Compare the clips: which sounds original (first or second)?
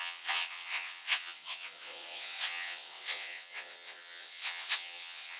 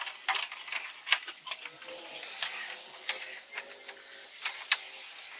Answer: second